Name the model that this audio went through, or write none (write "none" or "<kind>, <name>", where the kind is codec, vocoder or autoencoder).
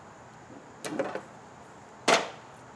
none